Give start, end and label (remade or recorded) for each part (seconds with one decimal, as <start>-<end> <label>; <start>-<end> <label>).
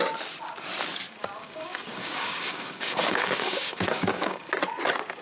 0.0-1.4 recorded; 1.4-4.5 remade; 4.5-5.2 recorded